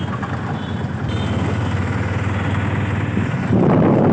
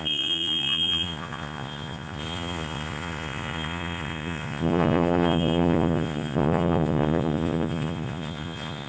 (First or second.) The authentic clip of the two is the first